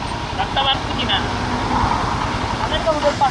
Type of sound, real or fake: real